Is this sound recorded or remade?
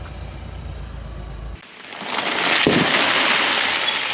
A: recorded